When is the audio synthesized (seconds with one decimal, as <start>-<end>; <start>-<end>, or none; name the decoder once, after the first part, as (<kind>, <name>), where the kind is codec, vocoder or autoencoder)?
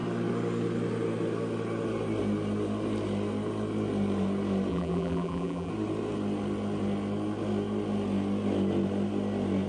4.7-5.7 (vocoder, BigVGAN v2)